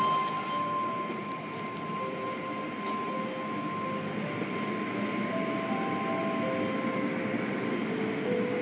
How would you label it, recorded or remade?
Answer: recorded